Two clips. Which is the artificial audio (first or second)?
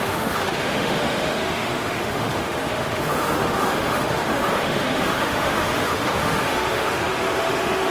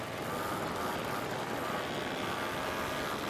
first